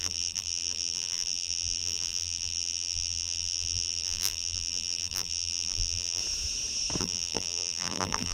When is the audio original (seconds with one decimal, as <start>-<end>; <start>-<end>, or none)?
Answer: 6.2-7.0